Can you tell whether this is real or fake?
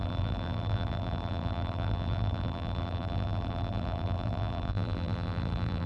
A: fake